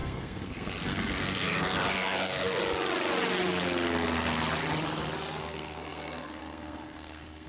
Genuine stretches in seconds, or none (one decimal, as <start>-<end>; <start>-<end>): 2.6-5.4